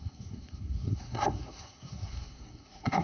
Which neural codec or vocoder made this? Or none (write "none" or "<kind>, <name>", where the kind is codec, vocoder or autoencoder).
codec, SNAC